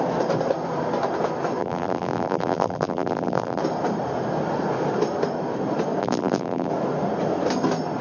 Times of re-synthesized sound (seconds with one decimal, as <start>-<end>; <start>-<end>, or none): 1.6-3.6; 6.0-6.7